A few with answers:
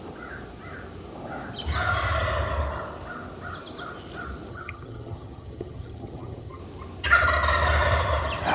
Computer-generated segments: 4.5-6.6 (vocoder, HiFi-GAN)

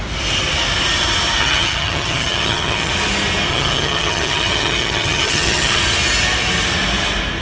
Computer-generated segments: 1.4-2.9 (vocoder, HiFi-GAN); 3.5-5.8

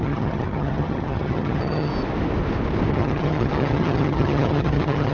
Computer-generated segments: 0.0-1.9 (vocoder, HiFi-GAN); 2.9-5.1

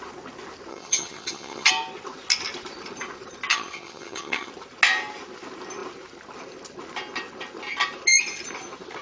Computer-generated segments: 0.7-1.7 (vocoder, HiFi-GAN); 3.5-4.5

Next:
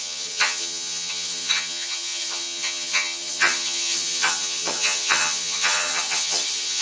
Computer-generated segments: 0.0-6.8 (vocoder, HiFi-GAN)

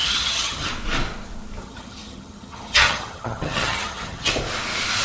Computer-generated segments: 0.0-0.7 (vocoder, HiFi-GAN); 1.6-4.3

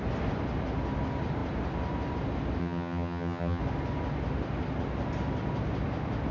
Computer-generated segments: 2.6-3.6 (vocoder, HiFi-GAN)